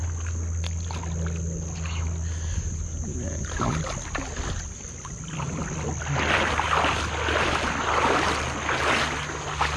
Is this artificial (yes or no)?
no